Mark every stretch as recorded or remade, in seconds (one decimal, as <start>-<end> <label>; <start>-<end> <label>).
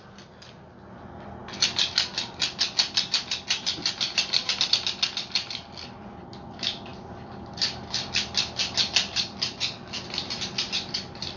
0.0-6.9 recorded; 6.9-9.5 remade; 9.5-11.4 recorded